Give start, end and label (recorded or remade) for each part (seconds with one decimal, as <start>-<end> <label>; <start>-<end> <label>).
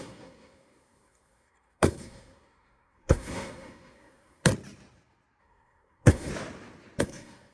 0.0-4.5 remade; 4.5-5.4 recorded; 5.4-6.3 remade; 6.3-7.0 recorded; 7.0-7.5 remade